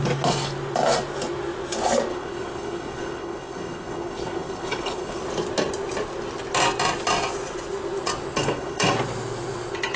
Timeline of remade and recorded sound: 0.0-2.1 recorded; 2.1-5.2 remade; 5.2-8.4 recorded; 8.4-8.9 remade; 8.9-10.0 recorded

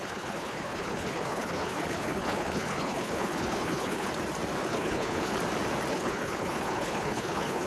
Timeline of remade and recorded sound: 0.0-4.1 remade; 4.1-4.6 recorded; 4.6-5.3 remade; 5.3-5.9 recorded; 5.9-7.7 remade